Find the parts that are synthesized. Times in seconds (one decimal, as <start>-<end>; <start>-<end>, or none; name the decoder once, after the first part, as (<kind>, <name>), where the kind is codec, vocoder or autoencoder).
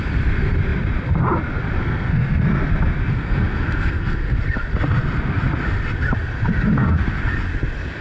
1.8-2.6 (codec, SNAC); 3.1-4.4